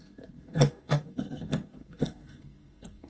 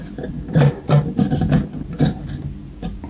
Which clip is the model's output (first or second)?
first